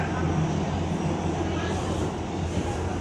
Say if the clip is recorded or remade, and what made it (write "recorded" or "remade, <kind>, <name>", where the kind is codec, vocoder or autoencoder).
recorded